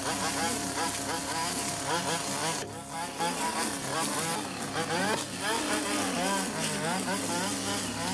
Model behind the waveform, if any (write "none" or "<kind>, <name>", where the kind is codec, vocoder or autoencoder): none